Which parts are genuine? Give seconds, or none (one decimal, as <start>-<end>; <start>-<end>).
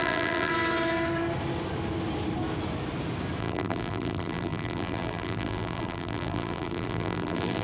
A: 0.5-3.4